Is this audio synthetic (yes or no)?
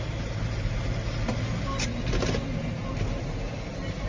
no